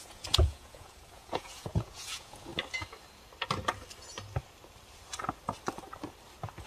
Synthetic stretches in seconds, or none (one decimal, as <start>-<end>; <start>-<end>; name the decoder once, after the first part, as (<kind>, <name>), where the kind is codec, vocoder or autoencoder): 0.0-2.5 (vocoder, Vocos)